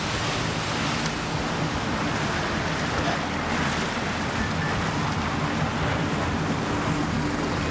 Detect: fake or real real